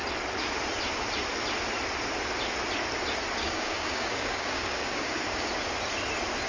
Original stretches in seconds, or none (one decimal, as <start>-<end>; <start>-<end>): 0.0-3.4; 5.5-6.5

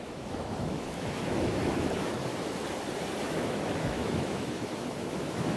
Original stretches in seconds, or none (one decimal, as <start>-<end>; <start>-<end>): 2.3-3.2

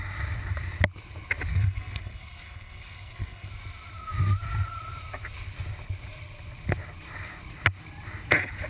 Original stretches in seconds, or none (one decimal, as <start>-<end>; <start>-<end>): 0.0-1.5; 3.5-8.7

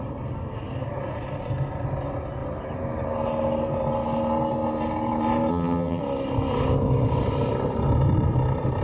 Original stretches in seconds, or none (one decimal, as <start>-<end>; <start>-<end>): 0.0-5.5; 6.0-8.8

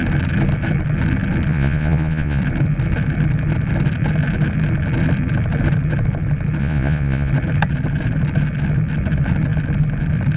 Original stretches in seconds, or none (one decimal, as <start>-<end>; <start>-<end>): 0.0-1.5; 2.4-6.6; 7.3-10.4

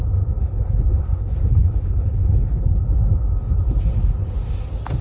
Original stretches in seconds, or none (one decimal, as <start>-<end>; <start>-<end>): 0.0-0.4; 2.8-5.0